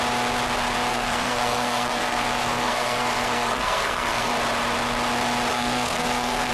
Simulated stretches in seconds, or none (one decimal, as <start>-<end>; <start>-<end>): 0.9-4.3; 5.5-6.5